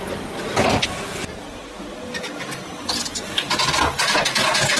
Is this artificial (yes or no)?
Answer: no